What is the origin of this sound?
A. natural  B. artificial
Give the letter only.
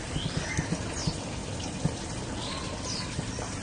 B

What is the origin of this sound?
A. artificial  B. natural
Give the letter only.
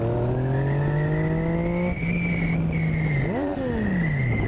B